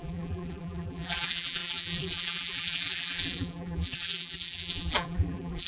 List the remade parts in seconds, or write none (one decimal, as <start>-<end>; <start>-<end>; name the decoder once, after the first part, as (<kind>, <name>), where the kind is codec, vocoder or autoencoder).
0.0-5.7 (vocoder, BigVGAN v2)